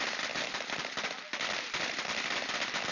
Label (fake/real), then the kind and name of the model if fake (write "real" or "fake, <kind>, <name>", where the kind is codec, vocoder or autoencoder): real